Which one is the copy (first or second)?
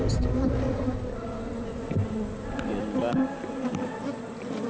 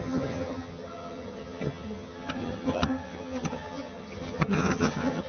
second